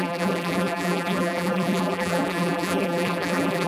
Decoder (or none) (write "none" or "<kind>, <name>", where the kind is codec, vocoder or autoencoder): vocoder, BigVGAN v2